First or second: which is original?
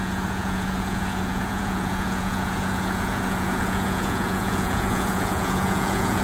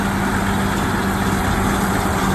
second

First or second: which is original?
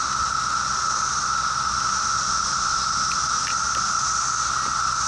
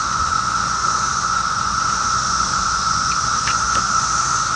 first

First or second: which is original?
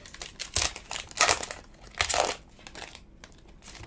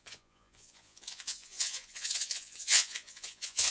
first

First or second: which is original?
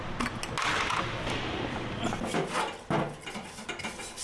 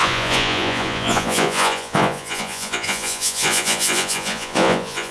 first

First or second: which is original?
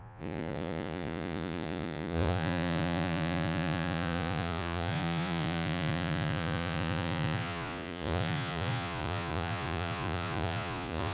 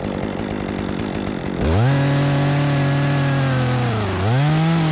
second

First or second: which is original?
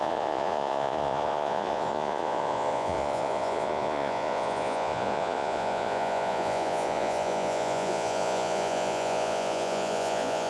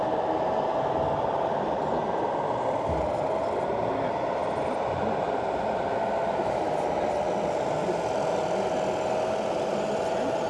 second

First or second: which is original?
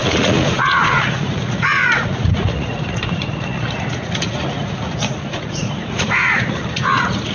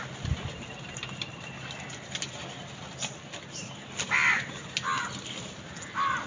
second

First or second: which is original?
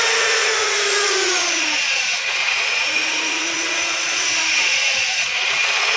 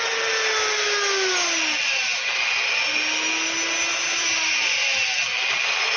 second